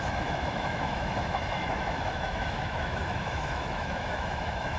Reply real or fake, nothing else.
fake